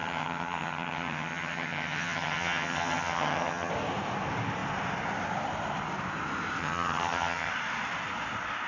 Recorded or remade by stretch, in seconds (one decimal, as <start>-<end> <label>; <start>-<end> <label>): 0.0-3.7 remade; 3.7-6.6 recorded; 6.6-7.5 remade; 7.5-8.7 recorded